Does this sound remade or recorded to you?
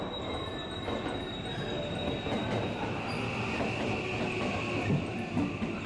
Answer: recorded